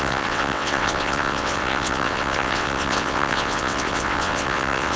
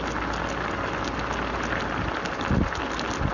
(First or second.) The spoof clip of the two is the first